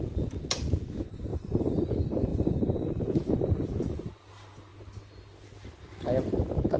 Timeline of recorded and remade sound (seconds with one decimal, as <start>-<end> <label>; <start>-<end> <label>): 0.0-1.3 recorded; 1.3-1.8 remade; 1.8-2.3 recorded; 2.3-4.3 remade; 4.3-6.8 recorded